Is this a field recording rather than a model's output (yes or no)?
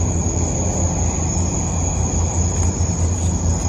yes